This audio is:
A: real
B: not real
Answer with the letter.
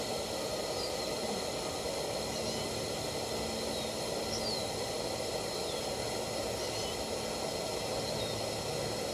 A